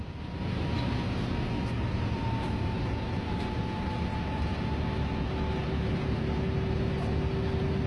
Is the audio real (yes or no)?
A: yes